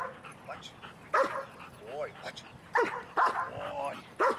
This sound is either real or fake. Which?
real